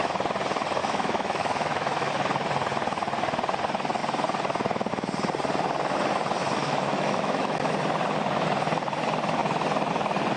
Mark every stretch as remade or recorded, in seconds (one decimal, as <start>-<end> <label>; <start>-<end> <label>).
0.0-0.8 recorded; 0.8-2.1 remade; 2.1-6.6 recorded; 6.6-7.7 remade; 7.7-10.4 recorded